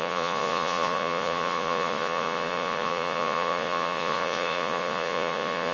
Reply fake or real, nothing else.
fake